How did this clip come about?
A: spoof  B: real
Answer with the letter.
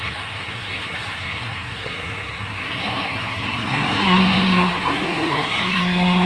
A